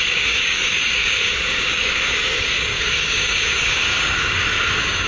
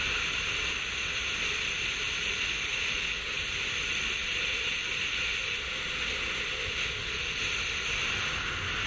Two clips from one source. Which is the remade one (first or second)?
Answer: first